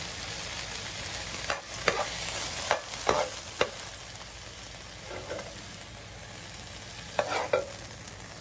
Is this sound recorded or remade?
recorded